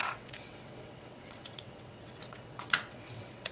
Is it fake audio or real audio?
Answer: fake